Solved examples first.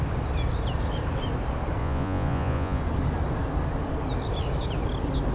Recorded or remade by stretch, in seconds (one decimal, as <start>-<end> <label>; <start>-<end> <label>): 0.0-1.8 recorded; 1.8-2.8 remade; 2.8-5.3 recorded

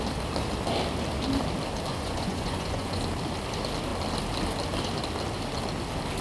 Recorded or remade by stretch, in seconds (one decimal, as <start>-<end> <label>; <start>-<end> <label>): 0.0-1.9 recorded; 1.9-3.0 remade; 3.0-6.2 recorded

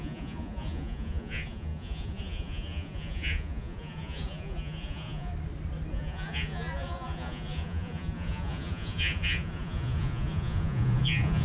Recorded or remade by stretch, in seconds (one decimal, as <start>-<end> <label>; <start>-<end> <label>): 0.0-5.3 remade; 5.3-5.9 recorded; 5.9-11.4 remade